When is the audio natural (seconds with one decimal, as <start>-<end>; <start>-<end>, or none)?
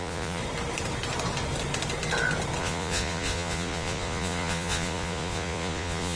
0.4-2.6